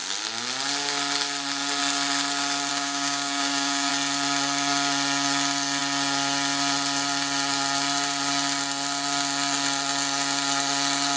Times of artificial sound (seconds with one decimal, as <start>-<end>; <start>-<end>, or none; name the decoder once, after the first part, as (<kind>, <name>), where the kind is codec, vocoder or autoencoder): 2.7-3.9 (codec, DAC)